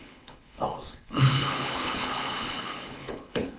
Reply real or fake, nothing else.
fake